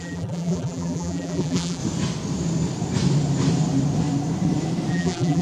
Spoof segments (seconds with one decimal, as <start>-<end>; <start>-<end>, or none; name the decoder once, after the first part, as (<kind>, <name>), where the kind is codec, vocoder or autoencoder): 0.0-1.8 (vocoder, BigVGAN v2); 4.9-5.4